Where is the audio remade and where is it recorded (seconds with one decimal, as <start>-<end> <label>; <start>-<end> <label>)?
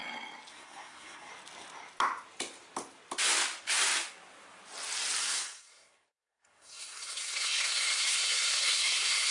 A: 0.0-0.5 recorded; 0.5-1.3 remade; 1.3-5.2 recorded; 5.2-9.3 remade